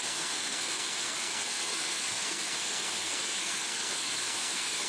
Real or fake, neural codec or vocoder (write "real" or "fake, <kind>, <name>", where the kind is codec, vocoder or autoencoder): fake, codec, SNAC